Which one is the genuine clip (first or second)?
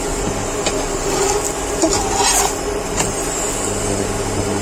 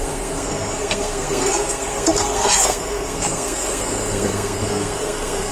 first